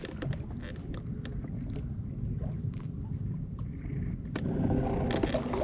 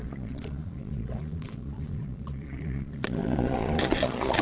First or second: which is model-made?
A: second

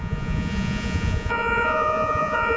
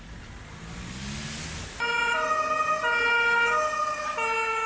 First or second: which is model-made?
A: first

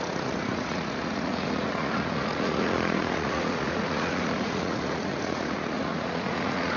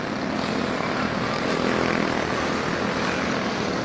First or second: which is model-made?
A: first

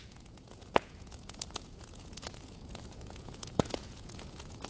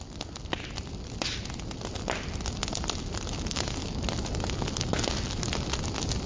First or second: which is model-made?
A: first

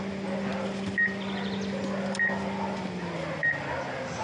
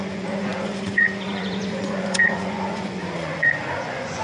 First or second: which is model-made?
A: second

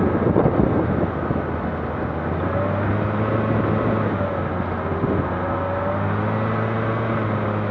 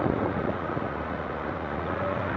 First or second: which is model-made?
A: second